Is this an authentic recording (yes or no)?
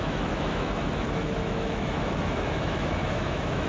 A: no